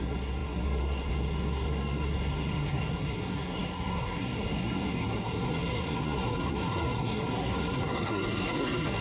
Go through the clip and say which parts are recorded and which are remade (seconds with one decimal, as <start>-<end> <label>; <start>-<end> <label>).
0.0-9.0 remade